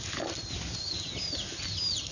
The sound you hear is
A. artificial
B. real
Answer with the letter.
B